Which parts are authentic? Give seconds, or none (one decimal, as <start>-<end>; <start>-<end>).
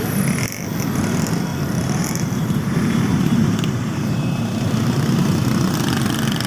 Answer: 0.0-1.5; 5.4-6.5